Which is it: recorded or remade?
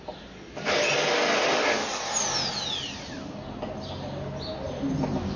recorded